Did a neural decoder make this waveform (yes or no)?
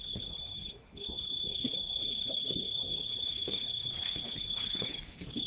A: yes